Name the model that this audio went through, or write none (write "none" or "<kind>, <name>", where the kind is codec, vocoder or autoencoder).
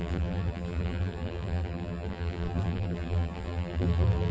vocoder, BigVGAN v2